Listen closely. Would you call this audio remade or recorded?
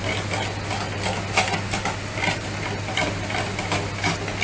recorded